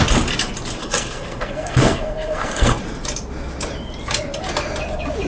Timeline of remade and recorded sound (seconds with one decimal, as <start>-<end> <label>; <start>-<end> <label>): 0.0-0.8 recorded; 0.8-2.8 remade; 2.8-5.3 recorded